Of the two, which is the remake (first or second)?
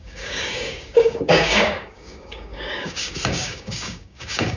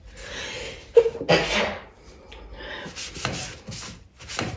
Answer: first